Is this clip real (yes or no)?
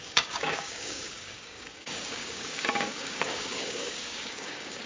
no